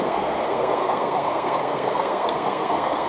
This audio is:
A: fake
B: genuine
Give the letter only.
A